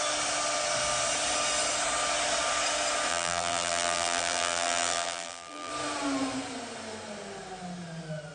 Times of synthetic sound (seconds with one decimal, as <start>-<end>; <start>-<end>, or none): 3.1-5.7